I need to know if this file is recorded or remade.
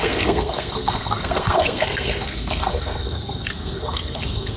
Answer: remade